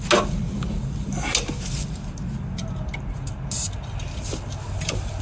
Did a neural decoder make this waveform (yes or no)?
no